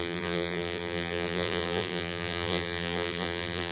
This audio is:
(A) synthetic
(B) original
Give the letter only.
A